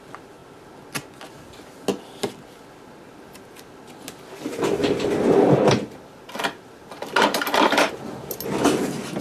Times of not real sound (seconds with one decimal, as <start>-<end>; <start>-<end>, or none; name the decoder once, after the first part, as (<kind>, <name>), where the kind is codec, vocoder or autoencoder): 4.8-7.9 (vocoder, BigVGAN v2)